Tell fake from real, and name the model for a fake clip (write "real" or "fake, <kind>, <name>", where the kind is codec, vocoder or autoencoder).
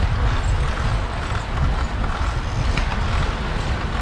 real